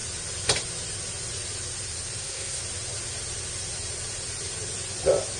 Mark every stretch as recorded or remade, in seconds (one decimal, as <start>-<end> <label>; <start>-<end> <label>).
0.0-2.2 recorded; 2.2-2.6 remade; 2.6-5.4 recorded